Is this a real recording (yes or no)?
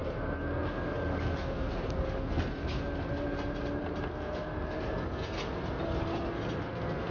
yes